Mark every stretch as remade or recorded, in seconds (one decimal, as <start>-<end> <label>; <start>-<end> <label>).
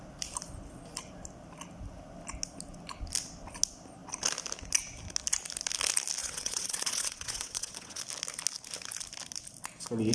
0.0-6.2 recorded; 6.2-8.0 remade; 8.0-10.1 recorded